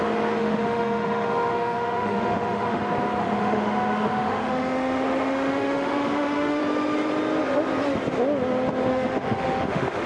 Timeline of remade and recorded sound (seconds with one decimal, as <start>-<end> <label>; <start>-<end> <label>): 0.0-0.4 recorded; 0.4-2.8 remade; 2.8-3.2 recorded; 3.2-6.6 remade; 6.6-8.9 recorded; 8.9-10.1 remade